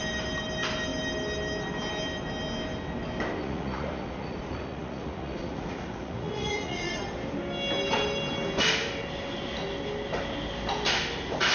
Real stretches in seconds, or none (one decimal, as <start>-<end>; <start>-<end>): 0.0-3.4; 7.0-11.5